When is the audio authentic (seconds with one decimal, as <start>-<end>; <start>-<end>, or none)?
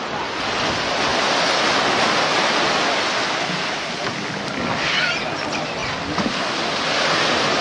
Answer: 0.0-7.6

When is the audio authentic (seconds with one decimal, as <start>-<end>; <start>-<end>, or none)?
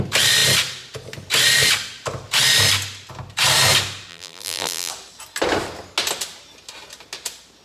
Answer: 0.0-4.1; 4.9-7.6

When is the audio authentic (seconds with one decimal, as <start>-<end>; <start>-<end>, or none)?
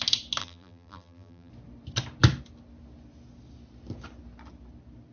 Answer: 0.0-0.4; 1.5-5.1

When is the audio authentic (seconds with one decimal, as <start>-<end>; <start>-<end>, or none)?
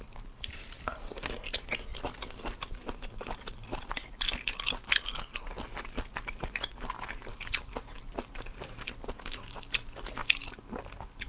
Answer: 0.0-1.9; 5.8-7.3; 8.1-11.3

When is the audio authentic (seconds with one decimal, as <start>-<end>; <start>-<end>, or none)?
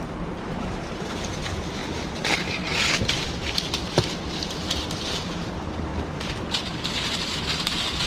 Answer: 1.8-2.4; 5.9-7.4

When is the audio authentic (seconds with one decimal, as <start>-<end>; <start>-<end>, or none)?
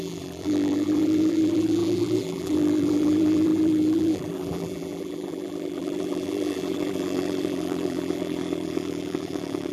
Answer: none